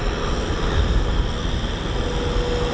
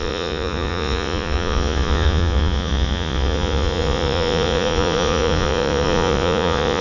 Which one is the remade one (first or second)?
second